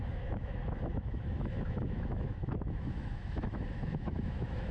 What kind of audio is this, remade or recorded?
remade